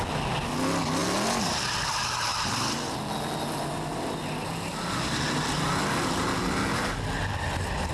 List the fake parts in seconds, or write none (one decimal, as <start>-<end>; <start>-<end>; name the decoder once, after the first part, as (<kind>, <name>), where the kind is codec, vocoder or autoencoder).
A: none